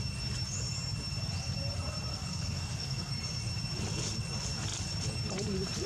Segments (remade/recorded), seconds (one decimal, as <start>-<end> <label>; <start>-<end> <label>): 0.0-2.1 recorded; 2.1-3.1 remade; 3.1-5.9 recorded